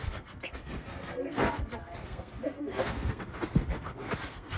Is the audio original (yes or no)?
no